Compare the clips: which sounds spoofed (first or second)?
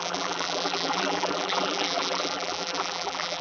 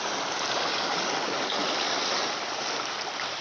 first